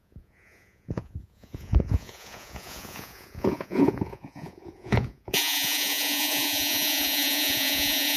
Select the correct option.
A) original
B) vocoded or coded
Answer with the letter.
B